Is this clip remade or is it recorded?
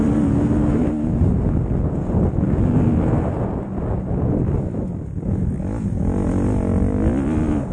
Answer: recorded